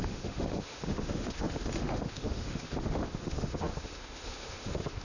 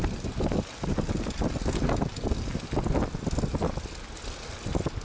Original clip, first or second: second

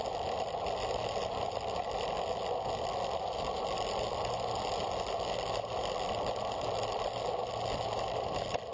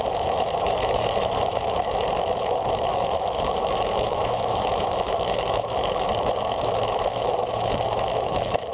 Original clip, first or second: first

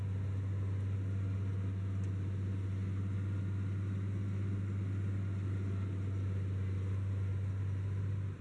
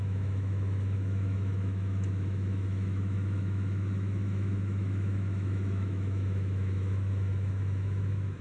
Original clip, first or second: first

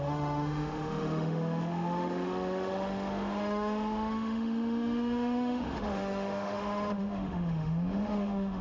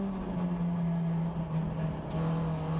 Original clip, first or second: second